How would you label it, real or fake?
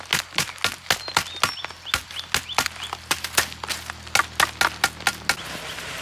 real